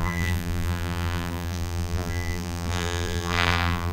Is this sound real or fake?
fake